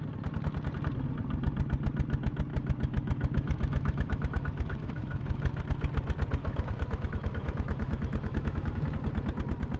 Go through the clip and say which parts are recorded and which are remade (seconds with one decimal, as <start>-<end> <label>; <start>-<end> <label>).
0.0-2.5 recorded; 2.5-5.6 remade; 5.6-6.4 recorded; 6.4-8.9 remade; 8.9-9.8 recorded

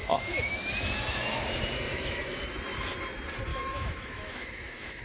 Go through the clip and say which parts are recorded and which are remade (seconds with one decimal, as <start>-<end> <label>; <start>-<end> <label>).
0.0-0.7 remade; 0.7-1.9 recorded; 1.9-2.4 remade; 2.4-3.5 recorded; 3.5-5.0 remade

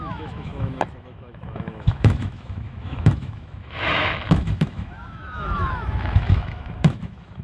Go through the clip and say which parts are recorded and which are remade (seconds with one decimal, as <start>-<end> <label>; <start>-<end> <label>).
0.0-7.4 remade

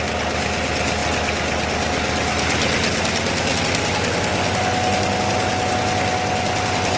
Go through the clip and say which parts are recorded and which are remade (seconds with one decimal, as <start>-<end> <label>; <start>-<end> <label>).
0.0-7.0 recorded

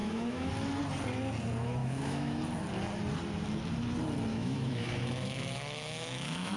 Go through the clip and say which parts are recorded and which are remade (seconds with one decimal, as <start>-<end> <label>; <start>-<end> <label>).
0.0-0.5 remade; 0.5-1.8 recorded; 1.8-2.4 remade; 2.4-4.3 recorded; 4.3-6.6 remade

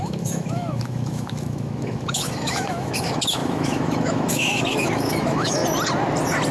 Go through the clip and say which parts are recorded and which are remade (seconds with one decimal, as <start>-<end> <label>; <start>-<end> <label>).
0.0-5.6 remade; 5.6-6.5 recorded

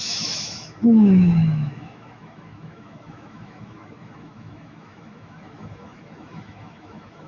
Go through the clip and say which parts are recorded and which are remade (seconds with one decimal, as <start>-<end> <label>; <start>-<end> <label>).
0.0-7.3 remade